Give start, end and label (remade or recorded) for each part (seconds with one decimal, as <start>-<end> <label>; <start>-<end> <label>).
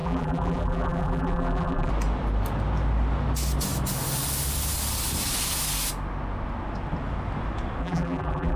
0.0-1.9 remade; 1.9-7.8 recorded; 7.8-8.6 remade